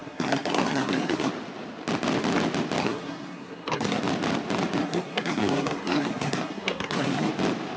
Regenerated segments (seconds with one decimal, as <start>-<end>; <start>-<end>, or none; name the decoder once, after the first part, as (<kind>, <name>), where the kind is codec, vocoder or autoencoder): 0.0-1.3 (codec, SNAC); 2.8-4.0; 4.8-7.3